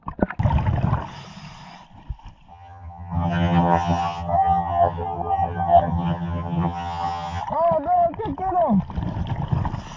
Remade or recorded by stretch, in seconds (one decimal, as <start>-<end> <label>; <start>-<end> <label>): 0.0-2.5 recorded; 2.5-7.4 remade; 7.4-10.0 recorded